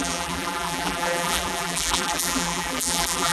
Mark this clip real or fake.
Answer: fake